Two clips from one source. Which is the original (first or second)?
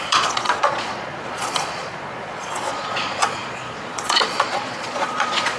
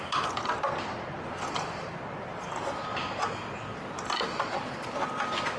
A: second